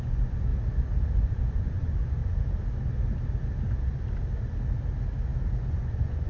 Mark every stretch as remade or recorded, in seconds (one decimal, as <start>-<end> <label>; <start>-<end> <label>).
0.0-0.5 remade; 0.5-1.1 recorded; 1.1-2.2 remade; 2.2-5.6 recorded; 5.6-6.3 remade